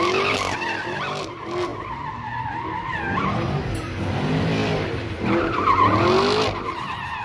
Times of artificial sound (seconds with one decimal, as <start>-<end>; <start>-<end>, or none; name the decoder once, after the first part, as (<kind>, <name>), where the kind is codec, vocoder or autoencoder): none